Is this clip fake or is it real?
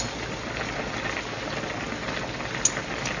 real